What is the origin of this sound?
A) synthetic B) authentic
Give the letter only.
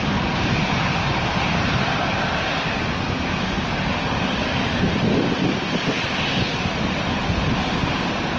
B